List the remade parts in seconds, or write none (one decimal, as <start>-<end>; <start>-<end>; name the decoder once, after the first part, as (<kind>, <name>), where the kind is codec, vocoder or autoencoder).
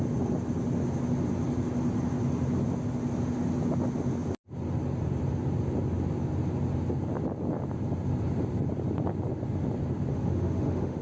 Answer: 10.1-11.0 (autoencoder, DAC-VAE)